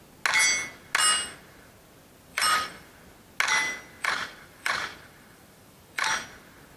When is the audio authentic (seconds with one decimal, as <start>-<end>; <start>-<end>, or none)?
0.0-2.3; 2.9-4.0; 6.1-6.8